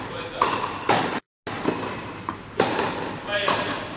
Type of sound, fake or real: real